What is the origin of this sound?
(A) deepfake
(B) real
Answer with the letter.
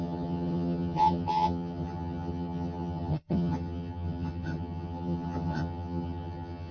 A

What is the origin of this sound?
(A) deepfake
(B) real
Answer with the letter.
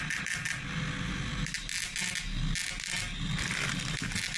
B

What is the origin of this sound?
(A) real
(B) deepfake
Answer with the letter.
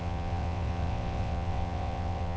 B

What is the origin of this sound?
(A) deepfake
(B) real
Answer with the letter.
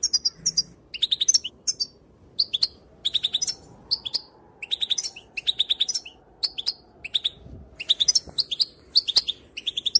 B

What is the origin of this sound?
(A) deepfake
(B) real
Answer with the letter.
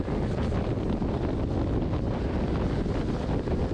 B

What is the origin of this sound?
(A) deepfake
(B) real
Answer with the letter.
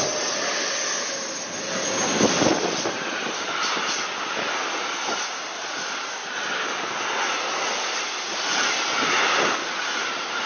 B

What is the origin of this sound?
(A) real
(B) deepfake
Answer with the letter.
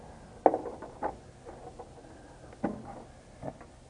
A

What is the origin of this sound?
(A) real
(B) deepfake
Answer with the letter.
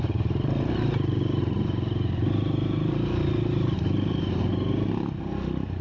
A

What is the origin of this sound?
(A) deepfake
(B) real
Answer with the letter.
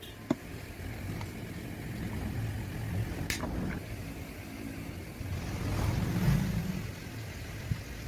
B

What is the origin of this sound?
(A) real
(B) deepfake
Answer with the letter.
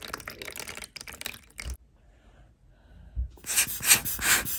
A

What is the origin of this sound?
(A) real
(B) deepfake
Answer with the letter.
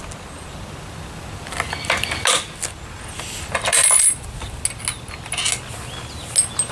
A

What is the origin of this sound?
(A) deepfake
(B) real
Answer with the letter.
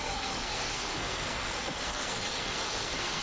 A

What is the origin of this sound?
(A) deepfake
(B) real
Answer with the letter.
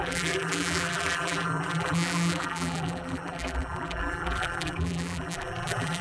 A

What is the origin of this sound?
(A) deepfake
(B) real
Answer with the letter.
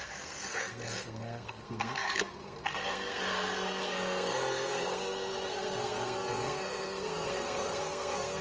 A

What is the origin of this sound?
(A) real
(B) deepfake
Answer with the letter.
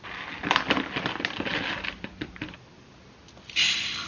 A